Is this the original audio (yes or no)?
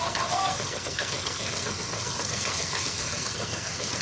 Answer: no